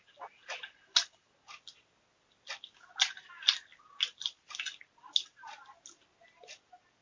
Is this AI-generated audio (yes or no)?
no